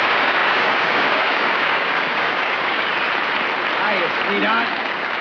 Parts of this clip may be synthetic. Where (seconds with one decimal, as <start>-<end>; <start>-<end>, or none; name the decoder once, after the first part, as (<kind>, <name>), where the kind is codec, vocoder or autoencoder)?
0.0-2.9 (codec, DAC); 4.7-5.2